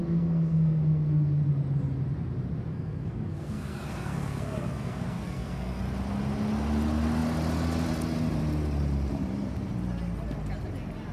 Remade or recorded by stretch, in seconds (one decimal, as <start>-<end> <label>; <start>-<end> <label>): 0.0-1.4 remade; 1.4-2.7 recorded; 2.7-5.8 remade; 5.8-11.1 recorded